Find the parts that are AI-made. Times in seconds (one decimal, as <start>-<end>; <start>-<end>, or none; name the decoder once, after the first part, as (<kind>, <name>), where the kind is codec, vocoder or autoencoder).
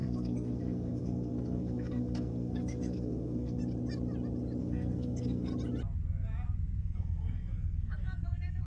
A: 0.0-3.6 (codec, SNAC); 4.6-5.5; 6.8-8.7